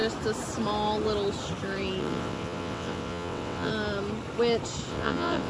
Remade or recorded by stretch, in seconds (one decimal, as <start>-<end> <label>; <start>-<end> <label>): 0.0-2.0 recorded; 2.0-3.7 remade; 3.7-4.9 recorded; 4.9-5.5 remade